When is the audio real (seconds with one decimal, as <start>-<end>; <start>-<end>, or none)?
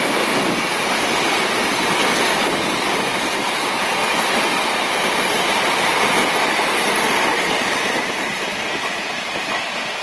0.0-4.0; 5.3-7.3; 9.4-10.0